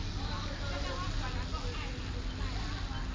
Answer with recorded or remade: recorded